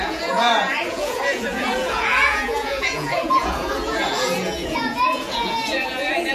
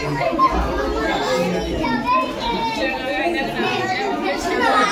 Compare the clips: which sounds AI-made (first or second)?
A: first